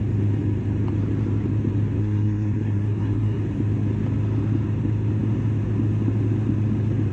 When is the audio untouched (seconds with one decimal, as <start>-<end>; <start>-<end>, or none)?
0.0-2.0; 3.4-7.1